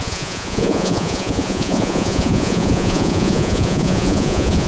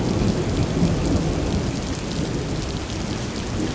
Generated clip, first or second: first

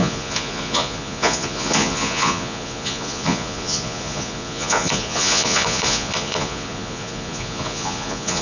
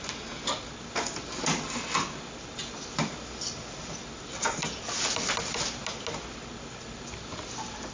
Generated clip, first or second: first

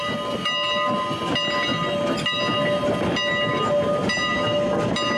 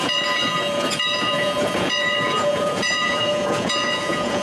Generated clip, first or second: second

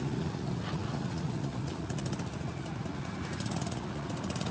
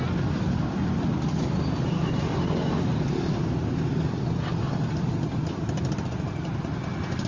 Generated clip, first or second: first